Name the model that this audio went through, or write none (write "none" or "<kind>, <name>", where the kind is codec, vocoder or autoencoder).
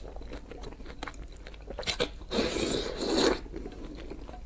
none